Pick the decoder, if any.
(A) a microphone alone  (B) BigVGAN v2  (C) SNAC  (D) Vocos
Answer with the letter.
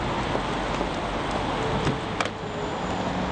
A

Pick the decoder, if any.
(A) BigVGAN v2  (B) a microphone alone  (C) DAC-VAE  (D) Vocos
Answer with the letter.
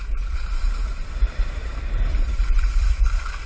A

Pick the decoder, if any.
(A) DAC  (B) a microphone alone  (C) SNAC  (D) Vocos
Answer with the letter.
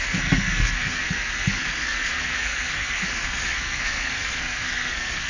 C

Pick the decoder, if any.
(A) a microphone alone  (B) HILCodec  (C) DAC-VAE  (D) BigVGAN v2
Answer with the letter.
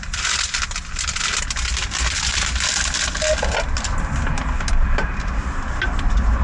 A